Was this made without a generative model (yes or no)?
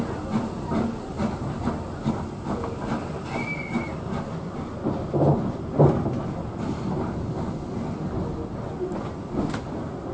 yes